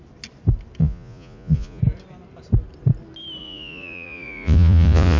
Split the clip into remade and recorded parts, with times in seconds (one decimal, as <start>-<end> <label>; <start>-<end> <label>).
0.0-0.8 recorded; 0.8-1.8 remade; 1.8-3.4 recorded; 3.4-5.2 remade